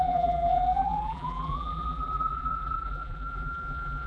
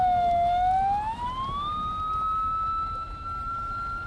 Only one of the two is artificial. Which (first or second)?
first